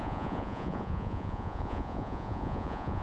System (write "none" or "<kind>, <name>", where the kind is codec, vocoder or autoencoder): vocoder, Vocos